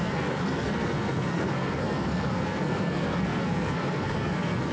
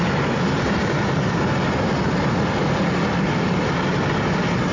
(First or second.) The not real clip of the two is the first